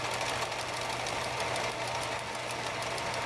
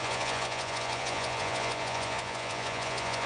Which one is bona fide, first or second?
first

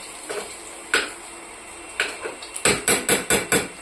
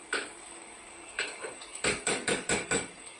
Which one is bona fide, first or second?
first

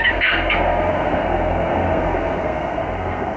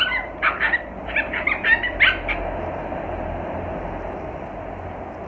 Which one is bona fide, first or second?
second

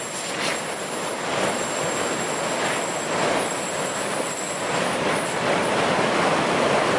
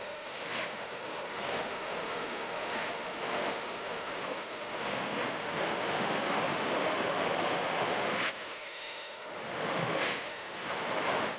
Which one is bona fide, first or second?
first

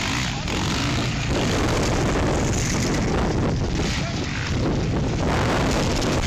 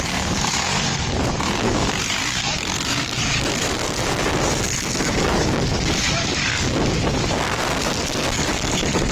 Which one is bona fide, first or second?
first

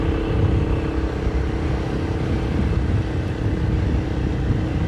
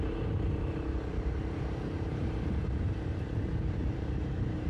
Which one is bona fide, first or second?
first